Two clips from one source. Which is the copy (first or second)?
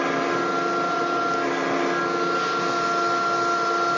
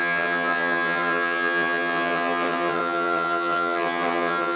second